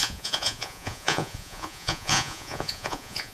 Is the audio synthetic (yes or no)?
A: yes